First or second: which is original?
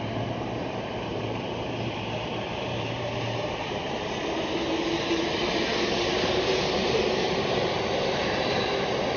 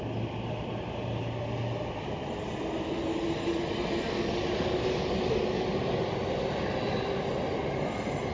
second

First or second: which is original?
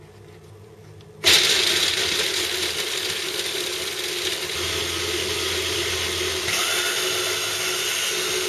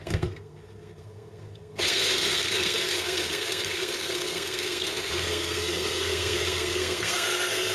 first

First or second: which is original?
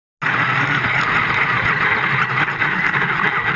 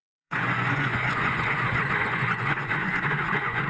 first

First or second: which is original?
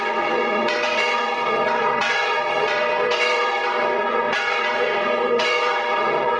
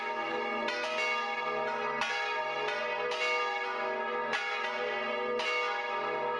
second